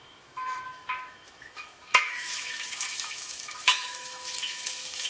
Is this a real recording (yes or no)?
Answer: no